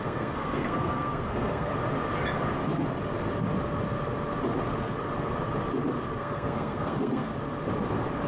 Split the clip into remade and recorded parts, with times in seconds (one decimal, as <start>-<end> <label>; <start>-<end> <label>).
0.0-1.7 remade; 1.7-6.2 recorded; 6.2-7.3 remade; 7.3-8.3 recorded